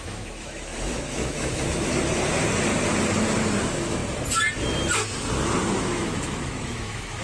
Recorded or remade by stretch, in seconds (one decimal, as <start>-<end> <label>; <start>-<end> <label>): 0.0-1.9 remade; 1.9-3.6 recorded; 3.6-4.0 remade; 4.0-5.8 recorded; 5.8-7.2 remade